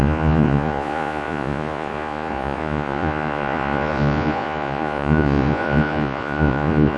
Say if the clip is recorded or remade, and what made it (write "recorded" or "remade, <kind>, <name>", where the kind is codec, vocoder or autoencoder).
remade, vocoder, Vocos